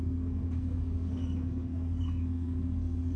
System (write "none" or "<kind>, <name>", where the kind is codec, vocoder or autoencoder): codec, SNAC